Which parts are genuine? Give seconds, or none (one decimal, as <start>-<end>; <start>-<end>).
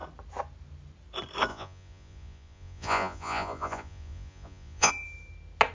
0.0-1.5; 4.9-5.7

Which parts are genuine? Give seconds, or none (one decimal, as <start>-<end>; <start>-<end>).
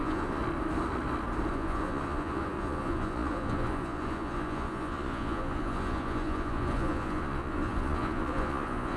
0.4-1.5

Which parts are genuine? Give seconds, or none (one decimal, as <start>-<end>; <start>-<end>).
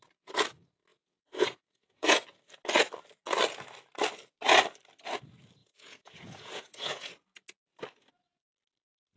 0.0-0.9; 2.2-5.6; 7.1-9.2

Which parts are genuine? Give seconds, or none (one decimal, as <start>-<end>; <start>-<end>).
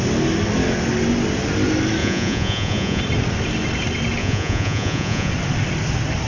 0.0-2.0; 3.0-4.2; 5.3-6.3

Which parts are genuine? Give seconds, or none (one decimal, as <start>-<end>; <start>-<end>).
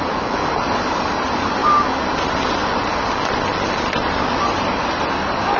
0.0-5.6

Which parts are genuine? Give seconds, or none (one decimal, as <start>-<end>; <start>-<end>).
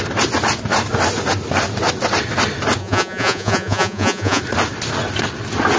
0.0-2.8; 4.4-5.8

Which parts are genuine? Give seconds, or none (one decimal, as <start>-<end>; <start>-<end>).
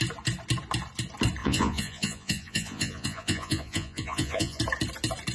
0.0-1.4; 4.6-5.3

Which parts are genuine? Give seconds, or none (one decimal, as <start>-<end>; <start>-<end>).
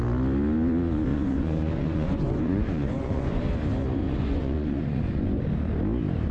0.0-1.1; 3.4-4.0; 5.4-6.3